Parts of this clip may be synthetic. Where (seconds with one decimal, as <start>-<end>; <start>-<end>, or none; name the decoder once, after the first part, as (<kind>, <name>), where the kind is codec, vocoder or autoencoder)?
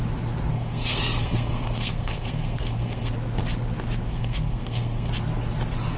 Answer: 0.5-3.1 (codec, SNAC); 4.1-5.1